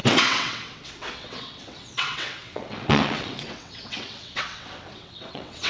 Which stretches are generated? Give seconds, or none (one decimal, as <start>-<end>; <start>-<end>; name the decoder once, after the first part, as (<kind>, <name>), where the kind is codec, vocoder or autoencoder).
0.0-5.7 (vocoder, WaveNeXt)